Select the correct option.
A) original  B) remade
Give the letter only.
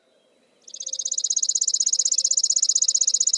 A